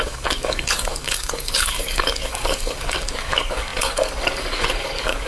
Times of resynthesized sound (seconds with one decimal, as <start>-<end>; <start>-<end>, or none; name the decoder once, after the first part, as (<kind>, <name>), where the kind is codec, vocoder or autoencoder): 0.0-5.3 (codec, DAC)